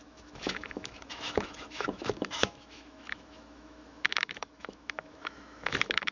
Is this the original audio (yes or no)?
no